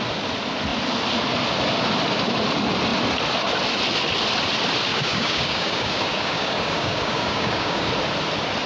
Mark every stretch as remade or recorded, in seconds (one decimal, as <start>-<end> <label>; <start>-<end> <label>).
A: 0.0-4.9 recorded; 4.9-7.9 remade; 7.9-8.7 recorded